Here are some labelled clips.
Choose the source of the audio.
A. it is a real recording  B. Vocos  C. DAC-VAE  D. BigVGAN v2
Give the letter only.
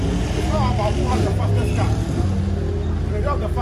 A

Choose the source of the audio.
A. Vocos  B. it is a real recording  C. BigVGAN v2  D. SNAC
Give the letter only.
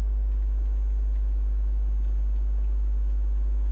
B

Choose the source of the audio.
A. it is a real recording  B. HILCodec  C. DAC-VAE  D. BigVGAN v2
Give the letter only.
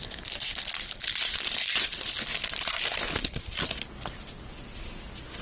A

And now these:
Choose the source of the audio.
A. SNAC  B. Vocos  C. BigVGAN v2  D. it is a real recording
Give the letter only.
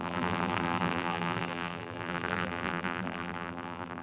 C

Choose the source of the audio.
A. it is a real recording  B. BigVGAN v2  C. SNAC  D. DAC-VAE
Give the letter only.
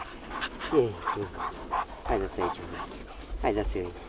A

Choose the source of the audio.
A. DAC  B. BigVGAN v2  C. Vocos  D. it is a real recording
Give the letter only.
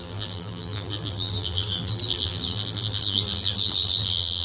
B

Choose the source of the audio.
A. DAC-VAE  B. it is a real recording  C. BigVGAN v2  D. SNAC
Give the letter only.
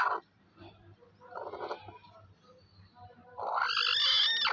B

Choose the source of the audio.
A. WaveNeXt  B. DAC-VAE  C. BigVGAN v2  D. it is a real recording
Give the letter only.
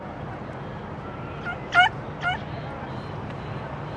D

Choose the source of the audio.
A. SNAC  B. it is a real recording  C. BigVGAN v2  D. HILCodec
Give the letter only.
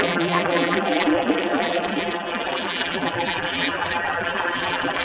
C